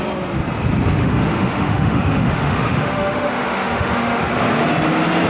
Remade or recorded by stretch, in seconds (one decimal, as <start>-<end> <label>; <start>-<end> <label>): 0.0-1.0 recorded; 1.0-4.2 remade; 4.2-5.3 recorded